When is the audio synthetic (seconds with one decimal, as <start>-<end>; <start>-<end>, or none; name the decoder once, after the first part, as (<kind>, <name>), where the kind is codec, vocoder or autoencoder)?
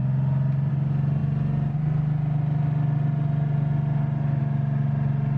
none